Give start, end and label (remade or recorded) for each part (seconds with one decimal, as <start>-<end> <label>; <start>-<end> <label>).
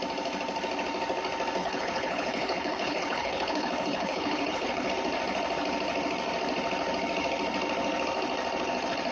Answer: 0.0-1.6 recorded; 1.6-4.9 remade; 4.9-9.1 recorded